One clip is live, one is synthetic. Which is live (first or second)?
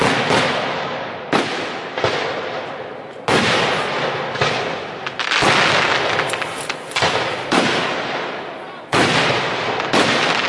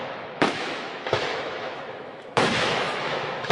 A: first